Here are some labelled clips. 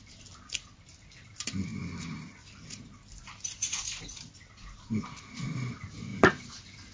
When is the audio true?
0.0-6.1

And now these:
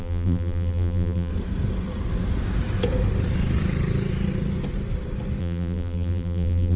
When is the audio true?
1.3-5.4